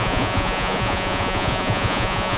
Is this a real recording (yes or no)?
no